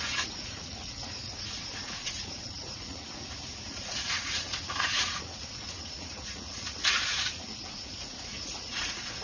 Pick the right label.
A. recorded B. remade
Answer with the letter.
B